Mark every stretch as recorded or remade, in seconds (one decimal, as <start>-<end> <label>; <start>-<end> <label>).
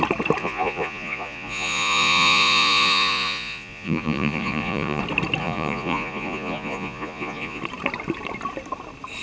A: 0.0-0.4 recorded; 0.4-5.0 remade; 5.0-5.4 recorded; 5.4-7.6 remade; 7.6-9.2 recorded